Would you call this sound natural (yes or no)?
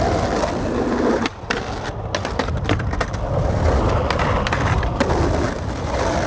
yes